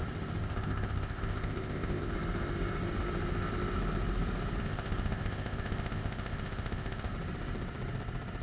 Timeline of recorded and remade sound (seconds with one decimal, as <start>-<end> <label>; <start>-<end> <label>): 0.0-0.4 recorded; 0.4-2.1 remade; 2.1-4.6 recorded; 4.6-7.1 remade; 7.1-8.4 recorded